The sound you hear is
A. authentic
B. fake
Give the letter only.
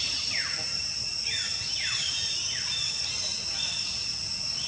A